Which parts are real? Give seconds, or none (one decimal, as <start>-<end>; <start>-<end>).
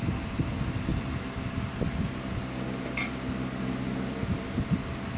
0.0-5.2